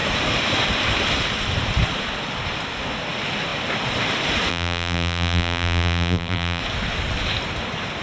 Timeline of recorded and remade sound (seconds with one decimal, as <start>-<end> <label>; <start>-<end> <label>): 0.0-4.5 recorded; 4.5-6.6 remade; 6.6-8.0 recorded